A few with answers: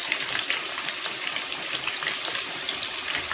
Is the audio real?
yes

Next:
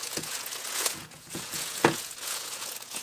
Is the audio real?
no